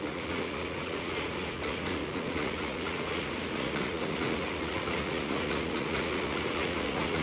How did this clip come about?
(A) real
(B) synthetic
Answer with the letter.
B